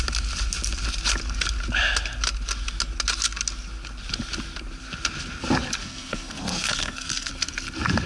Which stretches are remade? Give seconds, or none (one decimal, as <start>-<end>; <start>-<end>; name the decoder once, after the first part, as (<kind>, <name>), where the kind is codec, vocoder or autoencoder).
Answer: 5.8-7.3 (codec, SNAC)